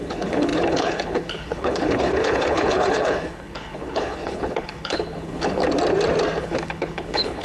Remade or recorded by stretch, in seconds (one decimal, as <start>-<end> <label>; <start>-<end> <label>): 0.0-5.6 remade; 5.6-6.4 recorded; 6.4-7.4 remade